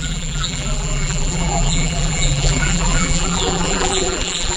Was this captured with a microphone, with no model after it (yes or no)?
no